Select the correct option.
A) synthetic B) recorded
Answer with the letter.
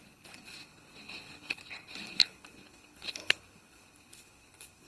A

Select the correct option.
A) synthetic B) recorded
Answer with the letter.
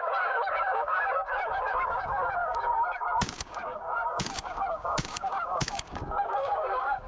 A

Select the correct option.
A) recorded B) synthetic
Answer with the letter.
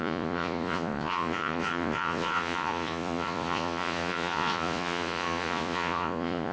B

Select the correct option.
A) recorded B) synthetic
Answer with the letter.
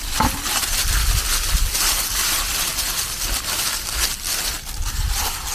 A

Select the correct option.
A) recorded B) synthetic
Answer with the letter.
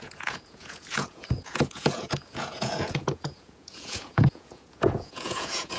B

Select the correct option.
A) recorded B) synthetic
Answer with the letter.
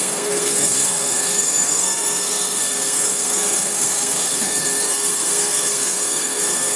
B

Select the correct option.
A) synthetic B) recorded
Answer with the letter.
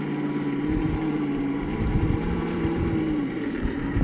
A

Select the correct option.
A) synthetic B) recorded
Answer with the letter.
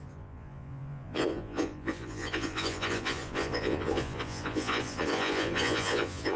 A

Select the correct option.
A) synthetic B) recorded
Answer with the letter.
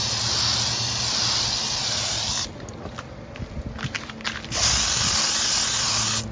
B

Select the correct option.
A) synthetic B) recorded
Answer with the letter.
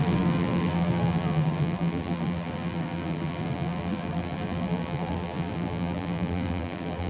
A